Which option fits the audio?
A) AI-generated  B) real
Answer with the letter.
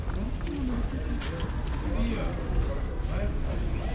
B